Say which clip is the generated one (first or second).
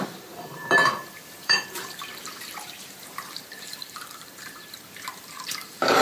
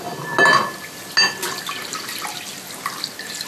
first